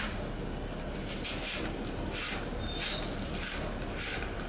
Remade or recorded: recorded